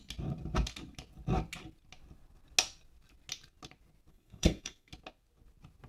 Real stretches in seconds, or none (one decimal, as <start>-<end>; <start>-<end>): 0.0-4.1; 4.9-5.9